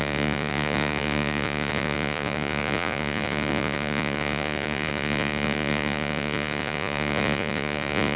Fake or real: fake